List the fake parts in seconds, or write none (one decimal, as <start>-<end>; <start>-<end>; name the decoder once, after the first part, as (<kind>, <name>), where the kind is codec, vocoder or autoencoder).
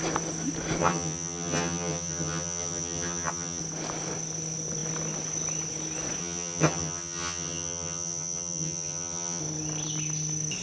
0.8-3.6 (vocoder, HiFi-GAN); 6.2-9.4